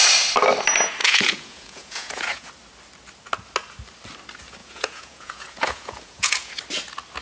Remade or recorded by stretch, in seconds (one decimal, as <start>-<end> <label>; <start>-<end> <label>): 0.0-1.0 recorded; 1.0-2.5 remade; 2.5-4.6 recorded; 4.6-6.5 remade; 6.5-7.2 recorded